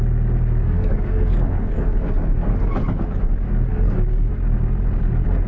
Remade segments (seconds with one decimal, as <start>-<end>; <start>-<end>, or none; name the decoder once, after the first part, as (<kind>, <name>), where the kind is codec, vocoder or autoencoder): 0.6-3.2 (codec, DAC); 3.7-4.3